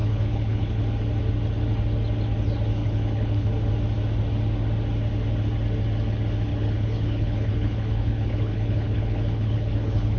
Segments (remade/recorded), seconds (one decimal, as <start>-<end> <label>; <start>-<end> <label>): 0.0-0.8 remade; 0.8-2.8 recorded; 2.8-3.5 remade; 3.5-6.5 recorded; 6.5-10.2 remade